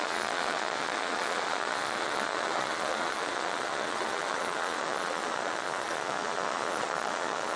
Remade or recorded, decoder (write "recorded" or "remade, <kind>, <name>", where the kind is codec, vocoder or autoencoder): remade, vocoder, Vocos